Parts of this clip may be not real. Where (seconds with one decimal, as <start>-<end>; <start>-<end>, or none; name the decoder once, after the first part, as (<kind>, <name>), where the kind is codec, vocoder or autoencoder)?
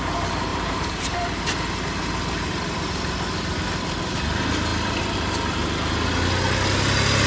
0.5-1.2 (vocoder, BigVGAN v2)